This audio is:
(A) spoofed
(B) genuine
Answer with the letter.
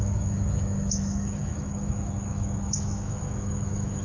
A